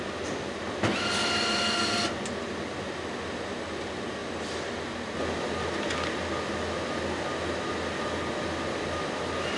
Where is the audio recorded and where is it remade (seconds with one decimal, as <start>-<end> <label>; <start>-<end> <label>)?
0.0-9.6 recorded